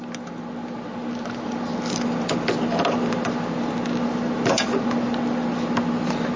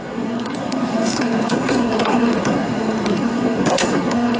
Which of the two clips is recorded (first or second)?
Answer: first